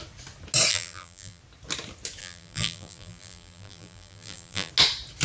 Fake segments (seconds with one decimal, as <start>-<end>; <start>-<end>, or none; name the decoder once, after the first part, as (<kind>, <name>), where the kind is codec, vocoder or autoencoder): 0.7-1.4 (vocoder, BigVGAN v2); 2.2-4.7